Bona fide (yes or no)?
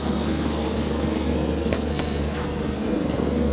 no